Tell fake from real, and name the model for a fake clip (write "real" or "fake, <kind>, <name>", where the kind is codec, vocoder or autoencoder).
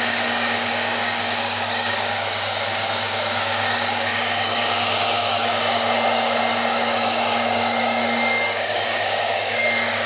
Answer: fake, codec, DAC